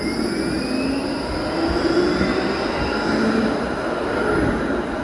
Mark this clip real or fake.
real